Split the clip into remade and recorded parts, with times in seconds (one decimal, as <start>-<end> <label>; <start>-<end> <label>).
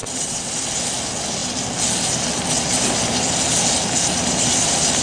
0.0-0.5 remade; 0.5-5.0 recorded